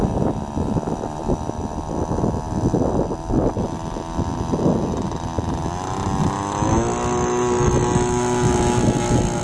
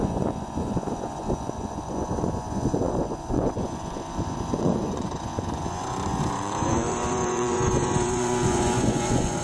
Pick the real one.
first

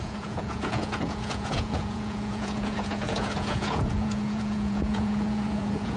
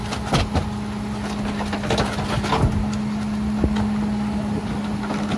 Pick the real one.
second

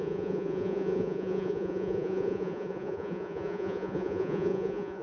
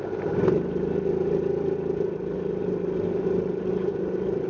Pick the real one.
second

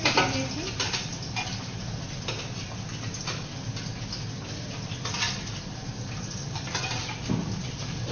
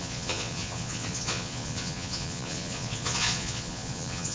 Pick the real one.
first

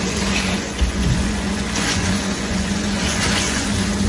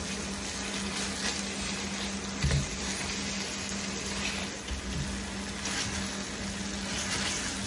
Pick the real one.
second